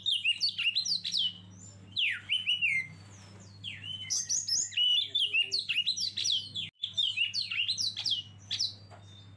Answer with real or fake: real